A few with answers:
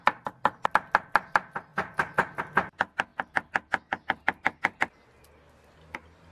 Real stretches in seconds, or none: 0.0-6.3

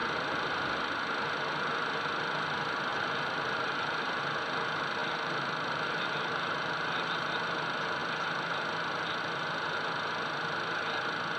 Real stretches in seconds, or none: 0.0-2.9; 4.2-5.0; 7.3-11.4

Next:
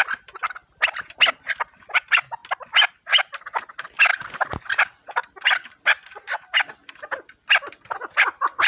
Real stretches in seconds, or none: 0.0-8.7

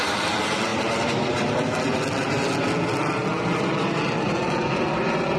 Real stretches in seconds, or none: 0.0-4.3; 4.8-5.4

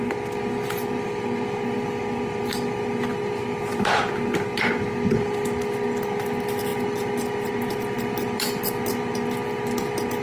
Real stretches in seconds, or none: 0.0-10.2

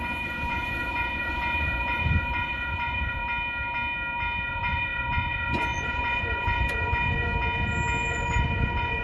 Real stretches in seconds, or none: 3.2-4.5; 7.3-8.1